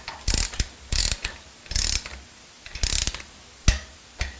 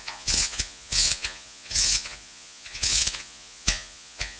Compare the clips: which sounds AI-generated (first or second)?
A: second